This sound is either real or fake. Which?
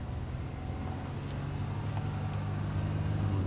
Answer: real